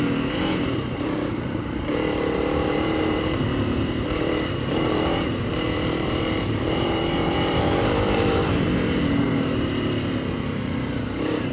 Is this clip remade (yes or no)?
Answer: yes